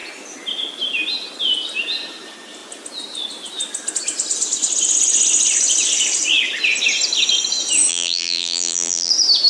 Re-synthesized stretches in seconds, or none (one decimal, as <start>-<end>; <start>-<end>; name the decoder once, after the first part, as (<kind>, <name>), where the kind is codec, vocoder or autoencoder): 7.9-9.1 (vocoder, BigVGAN v2)